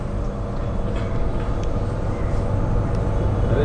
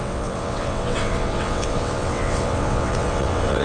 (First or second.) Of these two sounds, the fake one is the second